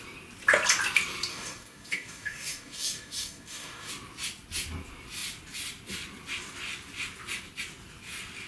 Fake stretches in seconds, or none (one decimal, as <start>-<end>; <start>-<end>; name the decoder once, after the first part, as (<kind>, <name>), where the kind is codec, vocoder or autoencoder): 1.3-3.9 (codec, DAC)